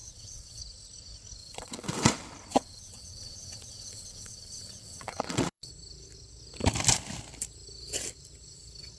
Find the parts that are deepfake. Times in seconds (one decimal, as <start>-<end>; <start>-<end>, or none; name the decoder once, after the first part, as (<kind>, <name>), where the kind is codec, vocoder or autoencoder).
0.0-0.6 (vocoder, WaveNeXt); 1.4-2.1; 2.5-5.7